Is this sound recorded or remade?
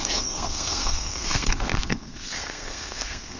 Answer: remade